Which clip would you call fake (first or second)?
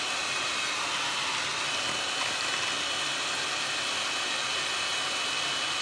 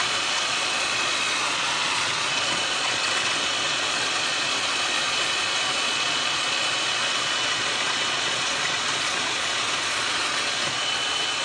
second